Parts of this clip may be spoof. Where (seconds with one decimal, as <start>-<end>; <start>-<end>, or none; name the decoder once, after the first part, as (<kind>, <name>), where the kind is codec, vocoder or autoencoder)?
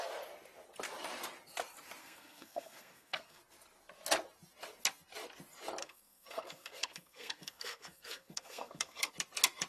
2.0-3.4 (codec, SNAC); 5.8-9.1